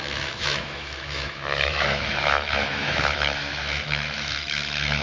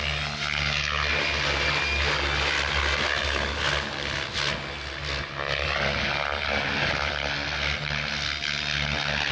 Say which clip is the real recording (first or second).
second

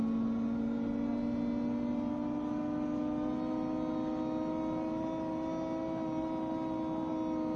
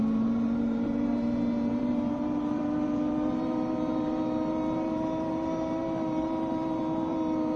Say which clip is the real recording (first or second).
first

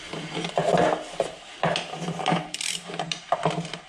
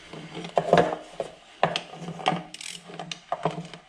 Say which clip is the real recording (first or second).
second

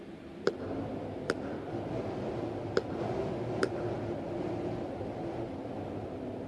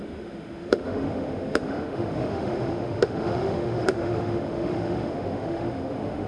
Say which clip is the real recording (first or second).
first